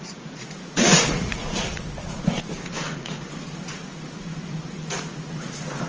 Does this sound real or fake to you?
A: fake